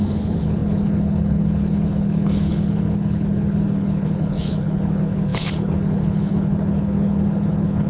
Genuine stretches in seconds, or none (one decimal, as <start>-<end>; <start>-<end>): none